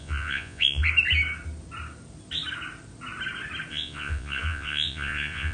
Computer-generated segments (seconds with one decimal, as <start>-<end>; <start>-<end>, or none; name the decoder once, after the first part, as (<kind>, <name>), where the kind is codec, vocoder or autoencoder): 0.0-0.8 (vocoder, Vocos); 3.7-5.5